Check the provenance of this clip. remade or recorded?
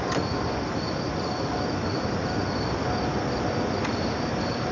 recorded